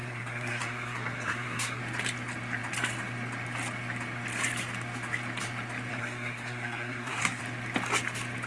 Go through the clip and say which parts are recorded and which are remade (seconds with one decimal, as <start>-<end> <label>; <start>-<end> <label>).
0.0-1.8 remade; 1.8-5.9 recorded; 5.9-7.4 remade; 7.4-8.5 recorded